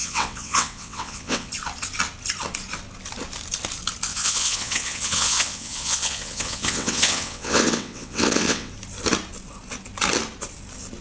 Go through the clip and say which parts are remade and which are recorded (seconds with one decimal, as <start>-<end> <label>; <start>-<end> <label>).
0.0-1.5 remade; 1.5-4.1 recorded; 4.1-8.7 remade; 8.7-11.0 recorded